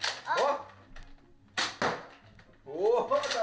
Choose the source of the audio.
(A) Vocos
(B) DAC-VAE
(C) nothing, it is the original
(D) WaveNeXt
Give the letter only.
C